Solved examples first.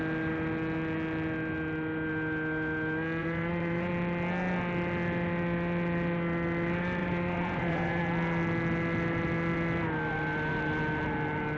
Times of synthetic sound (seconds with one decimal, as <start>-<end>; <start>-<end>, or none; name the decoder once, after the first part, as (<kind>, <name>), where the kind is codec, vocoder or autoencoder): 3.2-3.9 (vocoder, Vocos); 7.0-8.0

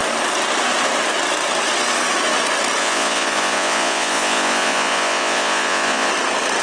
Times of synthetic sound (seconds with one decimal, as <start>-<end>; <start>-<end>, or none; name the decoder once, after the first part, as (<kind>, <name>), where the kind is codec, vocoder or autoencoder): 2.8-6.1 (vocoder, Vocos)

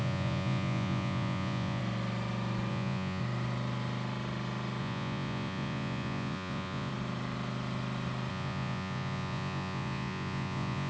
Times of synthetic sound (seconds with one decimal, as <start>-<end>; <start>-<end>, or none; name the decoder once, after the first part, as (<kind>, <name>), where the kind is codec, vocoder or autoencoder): 0.0-1.8 (vocoder, Vocos); 2.7-3.2; 4.8-6.9; 8.3-10.9